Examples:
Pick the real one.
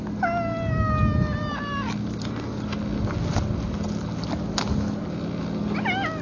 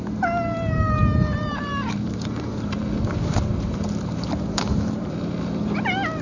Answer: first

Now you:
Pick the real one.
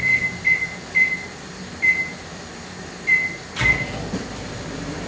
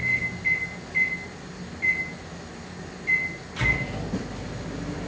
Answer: second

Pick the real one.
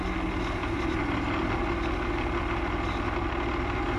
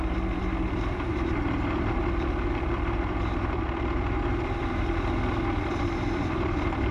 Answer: first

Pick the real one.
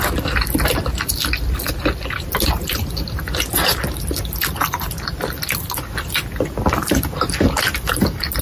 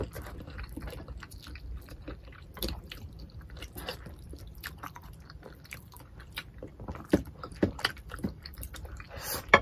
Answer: first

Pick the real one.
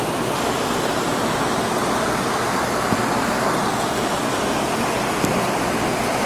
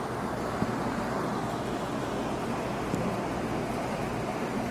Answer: second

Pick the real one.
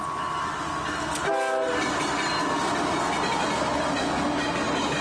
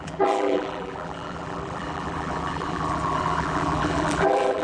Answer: first